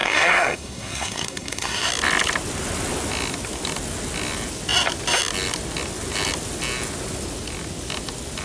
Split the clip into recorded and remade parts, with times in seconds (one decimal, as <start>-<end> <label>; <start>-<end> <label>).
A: 0.0-1.9 remade; 1.9-8.4 recorded